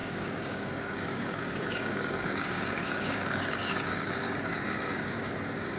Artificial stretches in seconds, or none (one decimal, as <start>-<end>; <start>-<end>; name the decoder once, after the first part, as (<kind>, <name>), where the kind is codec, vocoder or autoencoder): 0.0-5.8 (codec, DAC)